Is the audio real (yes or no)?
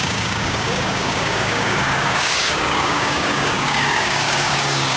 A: no